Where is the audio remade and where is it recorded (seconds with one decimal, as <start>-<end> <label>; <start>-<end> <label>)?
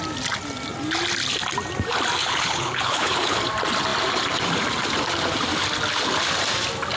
0.0-2.2 recorded; 2.2-3.4 remade; 3.4-7.0 recorded